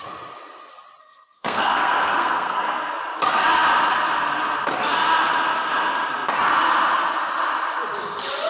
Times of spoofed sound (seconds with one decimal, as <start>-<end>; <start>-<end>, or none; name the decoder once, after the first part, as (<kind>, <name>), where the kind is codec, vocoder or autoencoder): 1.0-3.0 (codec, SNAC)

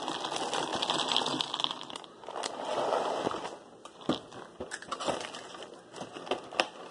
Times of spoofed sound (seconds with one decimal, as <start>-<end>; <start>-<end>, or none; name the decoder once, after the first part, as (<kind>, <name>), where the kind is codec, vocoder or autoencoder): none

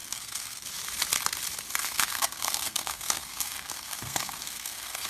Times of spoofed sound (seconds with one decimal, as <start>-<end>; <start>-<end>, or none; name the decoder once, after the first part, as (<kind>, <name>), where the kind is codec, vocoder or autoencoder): 0.0-0.6 (codec, SNAC); 1.8-5.1

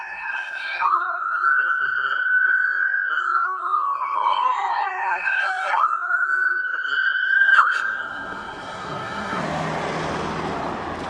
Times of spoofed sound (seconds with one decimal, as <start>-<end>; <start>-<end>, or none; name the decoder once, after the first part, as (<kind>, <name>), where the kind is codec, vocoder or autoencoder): 0.0-9.4 (codec, SNAC)

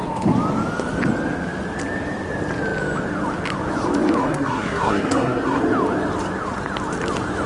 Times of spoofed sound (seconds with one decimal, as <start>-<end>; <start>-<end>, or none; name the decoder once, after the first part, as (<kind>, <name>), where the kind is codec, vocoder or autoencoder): 4.2-5.6 (codec, SNAC)